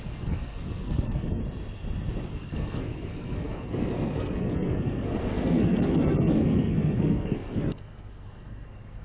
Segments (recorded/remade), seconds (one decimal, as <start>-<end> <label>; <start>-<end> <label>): 0.0-1.4 remade; 1.4-2.3 recorded; 2.3-9.0 remade